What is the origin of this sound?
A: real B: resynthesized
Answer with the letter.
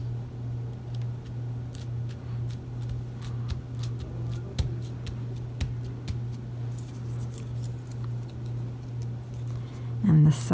A